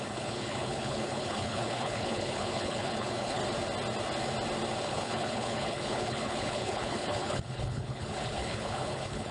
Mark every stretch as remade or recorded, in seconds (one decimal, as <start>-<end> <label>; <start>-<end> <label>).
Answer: 0.0-3.4 remade; 3.4-4.8 recorded; 4.8-9.3 remade

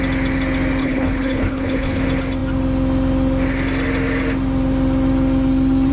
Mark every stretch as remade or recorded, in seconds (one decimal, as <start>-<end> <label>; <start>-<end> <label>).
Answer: 0.0-0.8 recorded; 0.8-2.0 remade; 2.0-5.9 recorded